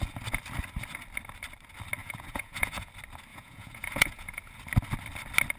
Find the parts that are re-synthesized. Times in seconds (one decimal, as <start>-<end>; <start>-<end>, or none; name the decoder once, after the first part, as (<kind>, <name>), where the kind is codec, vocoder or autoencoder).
2.0-2.9 (vocoder, Vocos); 3.3-4.6